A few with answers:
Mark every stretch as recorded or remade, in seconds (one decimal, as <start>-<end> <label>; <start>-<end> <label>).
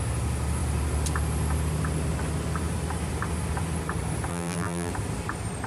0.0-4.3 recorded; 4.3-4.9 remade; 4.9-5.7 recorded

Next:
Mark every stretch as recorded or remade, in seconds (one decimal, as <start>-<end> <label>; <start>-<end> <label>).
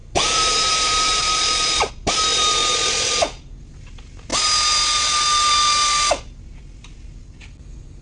0.0-1.9 remade; 1.9-8.0 recorded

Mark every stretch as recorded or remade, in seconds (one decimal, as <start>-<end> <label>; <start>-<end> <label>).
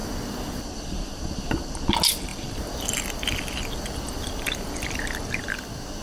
0.0-1.7 remade; 1.7-2.3 recorded; 2.3-5.0 remade; 5.0-6.0 recorded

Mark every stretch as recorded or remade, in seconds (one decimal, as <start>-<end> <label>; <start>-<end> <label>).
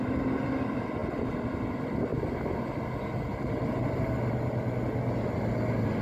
0.0-6.0 recorded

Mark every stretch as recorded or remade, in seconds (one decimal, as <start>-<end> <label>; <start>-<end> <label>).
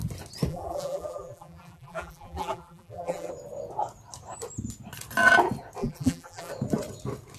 0.0-0.5 recorded; 0.5-3.3 remade; 3.3-5.8 recorded; 5.8-6.5 remade; 6.5-7.4 recorded